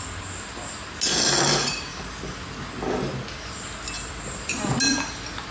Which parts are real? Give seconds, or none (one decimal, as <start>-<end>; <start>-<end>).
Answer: 0.0-5.5